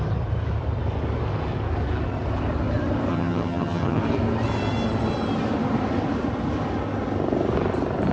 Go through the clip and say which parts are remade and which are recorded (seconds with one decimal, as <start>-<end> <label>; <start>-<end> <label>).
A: 0.0-3.1 recorded; 3.1-4.0 remade; 4.0-8.1 recorded

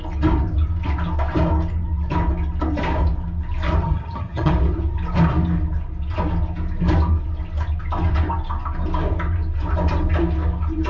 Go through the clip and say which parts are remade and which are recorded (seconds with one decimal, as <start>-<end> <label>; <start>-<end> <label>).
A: 0.0-3.8 recorded; 3.8-4.5 remade; 4.5-10.9 recorded

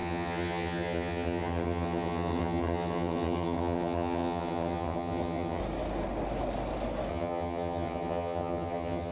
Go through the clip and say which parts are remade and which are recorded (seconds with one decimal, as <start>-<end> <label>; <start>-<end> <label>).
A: 0.0-5.6 remade; 5.6-7.1 recorded; 7.1-9.1 remade

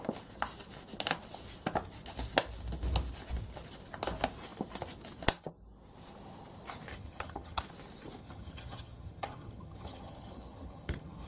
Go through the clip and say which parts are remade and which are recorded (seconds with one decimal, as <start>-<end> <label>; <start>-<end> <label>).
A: 0.0-6.9 recorded; 6.9-7.6 remade; 7.6-8.2 recorded; 8.2-11.3 remade

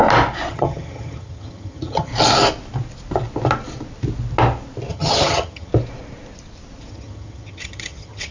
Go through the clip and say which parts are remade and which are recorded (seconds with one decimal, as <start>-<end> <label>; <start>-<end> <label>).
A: 0.0-0.5 recorded; 0.5-2.1 remade; 2.1-4.9 recorded; 4.9-5.7 remade; 5.7-6.9 recorded; 6.9-8.3 remade

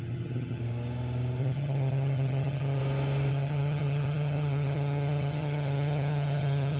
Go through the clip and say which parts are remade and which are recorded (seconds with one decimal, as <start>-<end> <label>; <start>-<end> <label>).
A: 0.0-0.6 remade; 0.6-1.4 recorded; 1.4-2.8 remade; 2.8-3.3 recorded; 3.3-6.8 remade